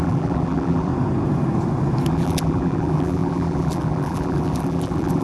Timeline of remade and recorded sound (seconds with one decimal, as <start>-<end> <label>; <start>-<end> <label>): 0.0-0.9 remade; 0.9-2.1 recorded; 2.1-5.2 remade